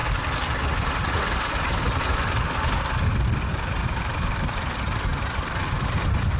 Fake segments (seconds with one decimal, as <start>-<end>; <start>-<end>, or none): 3.8-4.6